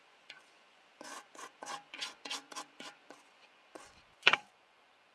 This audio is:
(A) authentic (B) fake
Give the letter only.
B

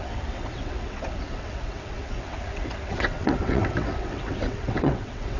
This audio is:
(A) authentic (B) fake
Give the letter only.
B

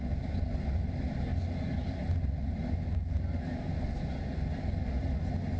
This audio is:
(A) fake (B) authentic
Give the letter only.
B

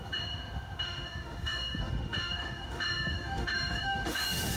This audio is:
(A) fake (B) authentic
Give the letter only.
A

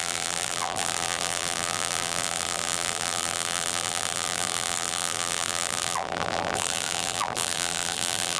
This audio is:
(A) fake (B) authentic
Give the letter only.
A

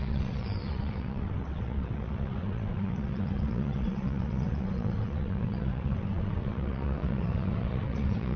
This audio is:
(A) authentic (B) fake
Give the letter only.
B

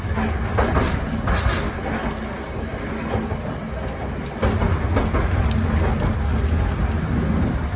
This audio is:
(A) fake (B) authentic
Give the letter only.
B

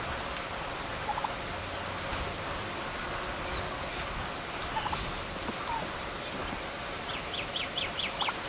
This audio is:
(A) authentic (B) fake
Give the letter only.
A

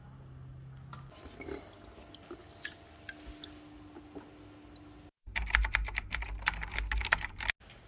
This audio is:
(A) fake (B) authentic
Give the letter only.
B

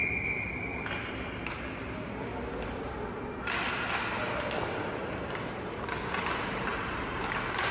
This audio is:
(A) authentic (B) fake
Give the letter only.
A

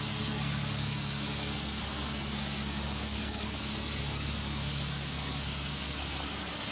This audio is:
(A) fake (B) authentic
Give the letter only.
A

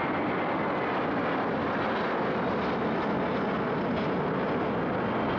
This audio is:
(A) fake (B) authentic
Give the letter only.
B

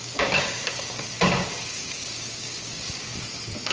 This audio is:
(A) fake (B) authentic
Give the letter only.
A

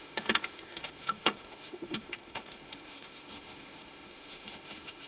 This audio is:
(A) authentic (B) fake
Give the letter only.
B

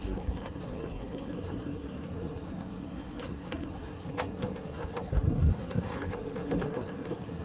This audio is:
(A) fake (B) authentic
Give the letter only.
A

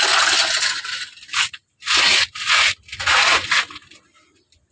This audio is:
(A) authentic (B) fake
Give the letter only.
A